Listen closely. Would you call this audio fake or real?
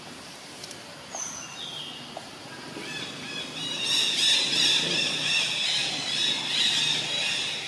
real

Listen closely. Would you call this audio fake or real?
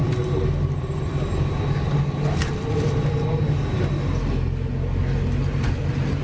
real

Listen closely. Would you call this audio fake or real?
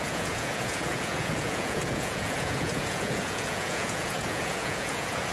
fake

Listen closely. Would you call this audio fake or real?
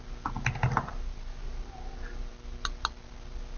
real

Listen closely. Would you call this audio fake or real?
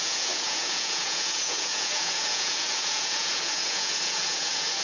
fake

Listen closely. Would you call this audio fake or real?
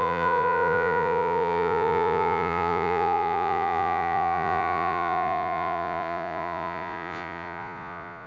fake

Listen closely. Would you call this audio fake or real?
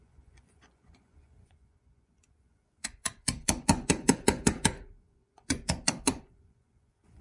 fake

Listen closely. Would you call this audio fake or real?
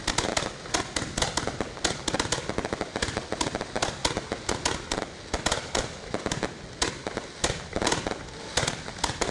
real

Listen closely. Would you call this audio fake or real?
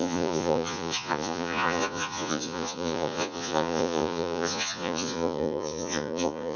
fake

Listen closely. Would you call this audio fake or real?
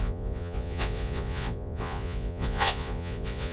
fake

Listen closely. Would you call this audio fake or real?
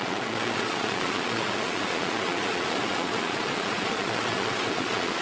fake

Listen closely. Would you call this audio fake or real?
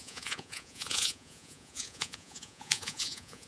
fake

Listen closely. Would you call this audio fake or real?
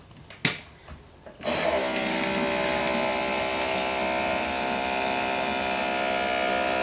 real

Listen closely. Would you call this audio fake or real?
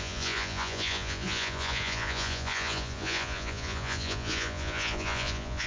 fake